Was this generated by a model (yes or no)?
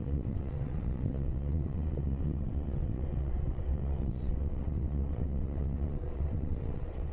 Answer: yes